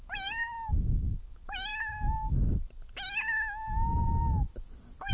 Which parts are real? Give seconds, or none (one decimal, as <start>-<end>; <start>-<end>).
0.0-5.1